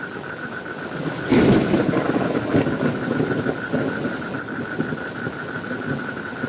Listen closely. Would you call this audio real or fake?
real